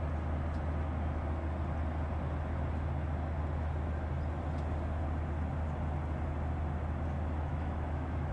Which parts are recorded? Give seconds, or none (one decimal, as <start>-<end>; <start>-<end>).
0.0-7.5